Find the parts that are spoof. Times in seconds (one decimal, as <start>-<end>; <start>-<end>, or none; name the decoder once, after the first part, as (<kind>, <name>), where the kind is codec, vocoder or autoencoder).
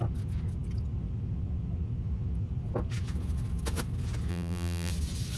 4.3-4.9 (vocoder, BigVGAN v2)